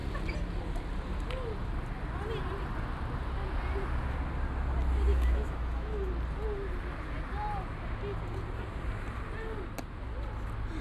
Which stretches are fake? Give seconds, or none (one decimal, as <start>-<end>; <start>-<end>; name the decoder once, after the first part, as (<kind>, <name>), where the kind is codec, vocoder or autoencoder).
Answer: 5.1-6.1 (autoencoder, DAC-VAE)